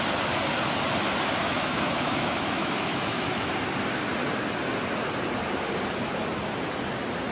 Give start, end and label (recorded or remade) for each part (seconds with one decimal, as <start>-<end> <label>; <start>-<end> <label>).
0.0-1.4 recorded; 1.4-3.5 remade; 3.5-7.3 recorded